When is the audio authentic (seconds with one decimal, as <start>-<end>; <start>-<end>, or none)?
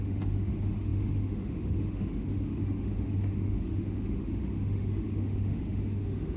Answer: none